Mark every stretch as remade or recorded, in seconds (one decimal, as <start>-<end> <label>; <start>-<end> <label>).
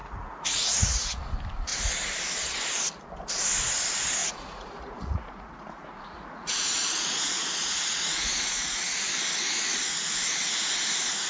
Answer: 0.0-1.2 remade; 1.2-4.2 recorded; 4.2-9.0 remade; 9.0-11.3 recorded